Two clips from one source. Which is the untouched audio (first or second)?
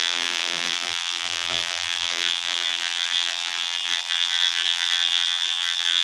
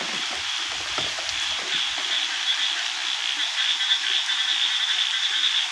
second